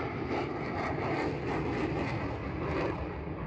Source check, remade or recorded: recorded